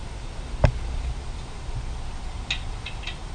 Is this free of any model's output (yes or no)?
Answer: yes